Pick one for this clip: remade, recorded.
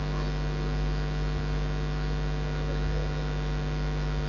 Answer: recorded